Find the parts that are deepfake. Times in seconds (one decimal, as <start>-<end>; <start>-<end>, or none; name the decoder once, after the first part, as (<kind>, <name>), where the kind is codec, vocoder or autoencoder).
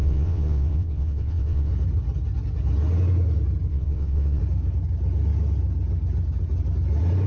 0.0-1.7 (vocoder, WaveNeXt); 3.7-4.4